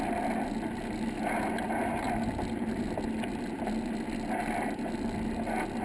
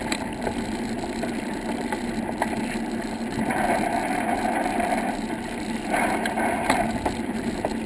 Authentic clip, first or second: first